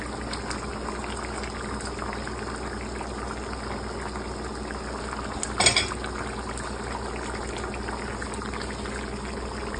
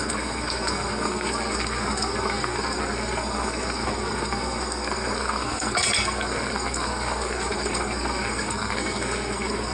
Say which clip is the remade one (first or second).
second